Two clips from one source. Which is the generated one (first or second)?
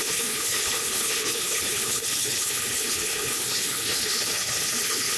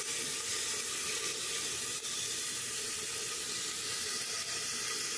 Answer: first